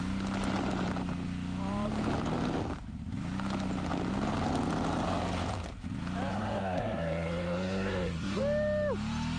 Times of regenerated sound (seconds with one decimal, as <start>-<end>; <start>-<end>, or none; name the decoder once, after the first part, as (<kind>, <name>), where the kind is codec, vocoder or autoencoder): 6.3-8.4 (codec, SNAC)